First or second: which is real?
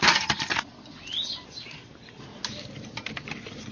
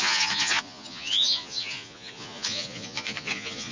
first